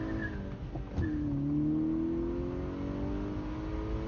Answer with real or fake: real